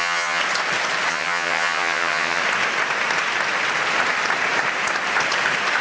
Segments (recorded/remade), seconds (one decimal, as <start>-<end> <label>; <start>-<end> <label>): 0.0-0.4 remade; 0.4-1.1 recorded; 1.1-2.4 remade; 2.4-5.8 recorded